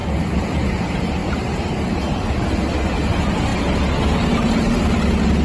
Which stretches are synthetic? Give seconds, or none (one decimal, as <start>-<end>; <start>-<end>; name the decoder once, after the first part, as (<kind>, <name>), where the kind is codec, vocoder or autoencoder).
none